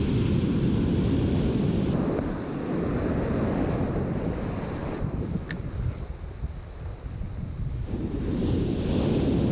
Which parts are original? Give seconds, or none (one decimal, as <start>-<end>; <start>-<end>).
0.0-8.4; 9.1-9.5